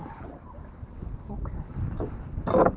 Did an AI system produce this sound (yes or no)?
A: no